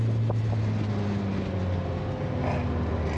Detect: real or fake real